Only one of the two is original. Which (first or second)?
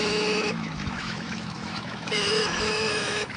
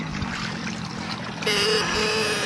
second